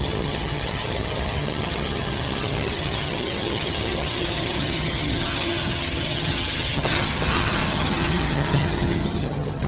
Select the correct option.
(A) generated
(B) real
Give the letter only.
A